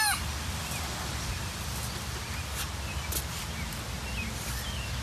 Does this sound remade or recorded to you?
recorded